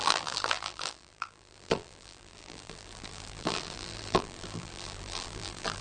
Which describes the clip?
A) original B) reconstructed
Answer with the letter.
B